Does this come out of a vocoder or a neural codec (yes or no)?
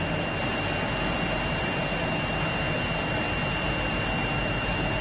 no